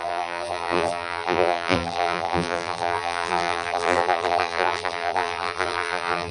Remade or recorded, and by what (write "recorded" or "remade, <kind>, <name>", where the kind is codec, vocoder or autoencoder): remade, vocoder, BigVGAN v2